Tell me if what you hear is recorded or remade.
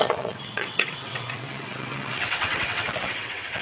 remade